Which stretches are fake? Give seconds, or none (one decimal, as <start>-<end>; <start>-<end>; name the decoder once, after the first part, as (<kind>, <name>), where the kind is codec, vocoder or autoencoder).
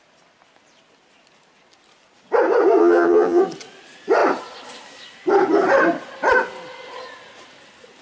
2.8-3.4 (vocoder, HiFi-GAN)